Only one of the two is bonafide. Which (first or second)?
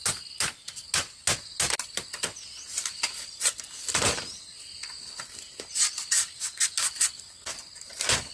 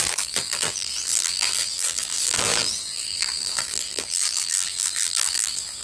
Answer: first